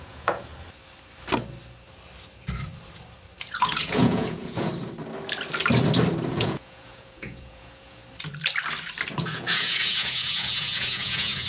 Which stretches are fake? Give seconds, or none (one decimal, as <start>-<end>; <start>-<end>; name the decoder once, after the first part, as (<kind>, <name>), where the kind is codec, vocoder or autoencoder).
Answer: 0.0-0.5 (vocoder, Vocos); 3.4-4.7; 6.3-8.0; 9.2-11.5